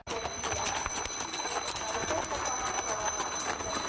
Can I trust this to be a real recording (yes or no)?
yes